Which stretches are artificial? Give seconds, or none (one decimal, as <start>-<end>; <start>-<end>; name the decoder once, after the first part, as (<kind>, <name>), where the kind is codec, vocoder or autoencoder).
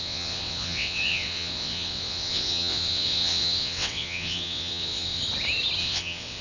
0.0-5.2 (vocoder, WaveNeXt); 5.8-6.4